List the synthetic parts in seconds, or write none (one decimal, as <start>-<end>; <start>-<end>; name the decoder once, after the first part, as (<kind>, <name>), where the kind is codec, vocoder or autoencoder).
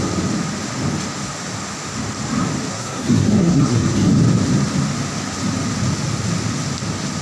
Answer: 2.7-4.1 (codec, SNAC)